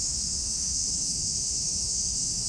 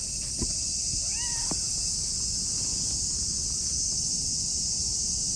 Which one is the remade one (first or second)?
first